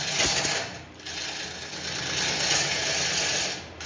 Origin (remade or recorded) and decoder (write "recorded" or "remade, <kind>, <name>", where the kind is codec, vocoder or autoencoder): recorded